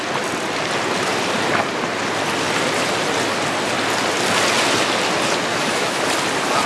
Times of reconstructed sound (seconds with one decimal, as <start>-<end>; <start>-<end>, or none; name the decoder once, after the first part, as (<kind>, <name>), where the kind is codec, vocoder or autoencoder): 5.5-6.0 (autoencoder, DAC-VAE)